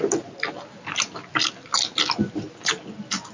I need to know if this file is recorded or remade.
recorded